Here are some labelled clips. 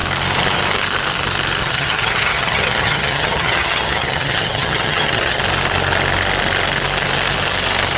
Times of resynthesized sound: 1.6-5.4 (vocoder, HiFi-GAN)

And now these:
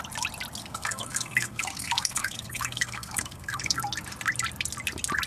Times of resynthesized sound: 0.6-3.8 (codec, SNAC)

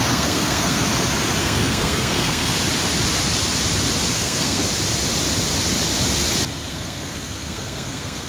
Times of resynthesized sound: 0.0-0.8 (codec, SNAC); 1.4-2.5; 4.1-4.6; 6.7-8.3

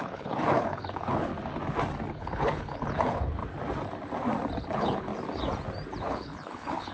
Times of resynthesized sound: 0.0-1.3 (codec, HILCodec); 2.1-3.4; 4.6-5.1; 6.0-6.9

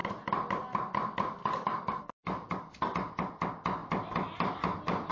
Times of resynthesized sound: 1.4-2.8 (codec, DAC)

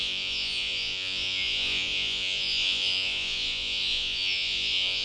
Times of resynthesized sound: 0.0-5.0 (vocoder, Vocos)

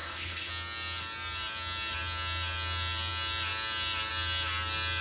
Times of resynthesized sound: 0.0-0.5 (codec, HILCodec)

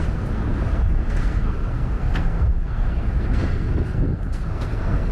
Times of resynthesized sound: 0.0-5.1 (codec, SNAC)